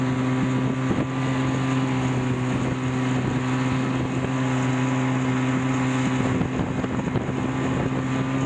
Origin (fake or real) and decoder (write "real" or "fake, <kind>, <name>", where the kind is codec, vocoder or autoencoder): real